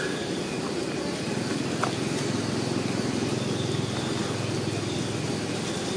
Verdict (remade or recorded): recorded